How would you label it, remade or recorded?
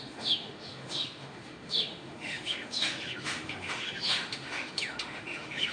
remade